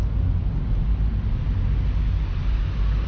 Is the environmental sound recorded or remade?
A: recorded